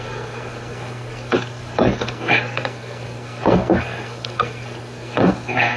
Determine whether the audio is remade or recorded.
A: remade